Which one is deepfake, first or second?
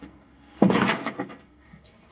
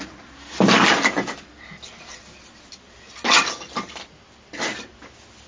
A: first